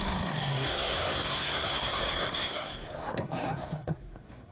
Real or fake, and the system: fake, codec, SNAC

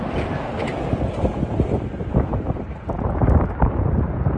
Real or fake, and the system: real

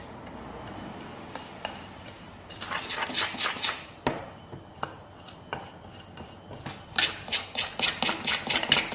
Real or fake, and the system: real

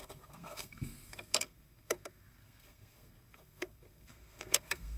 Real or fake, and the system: fake, codec, SNAC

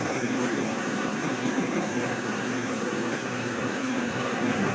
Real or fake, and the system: fake, codec, SNAC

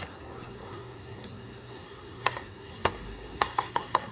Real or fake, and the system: fake, codec, SNAC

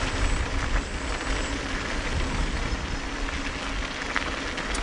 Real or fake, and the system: real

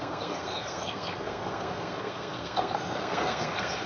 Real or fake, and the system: fake, codec, SNAC